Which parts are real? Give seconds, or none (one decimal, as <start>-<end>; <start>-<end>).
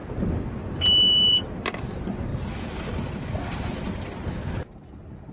1.8-2.3; 4.0-5.3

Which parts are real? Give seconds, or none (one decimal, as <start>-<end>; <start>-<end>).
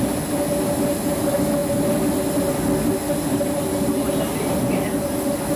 0.0-5.6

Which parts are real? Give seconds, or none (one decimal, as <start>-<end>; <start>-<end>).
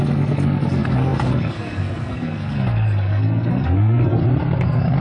4.2-5.0